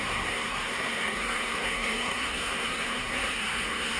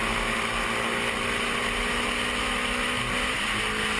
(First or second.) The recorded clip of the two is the second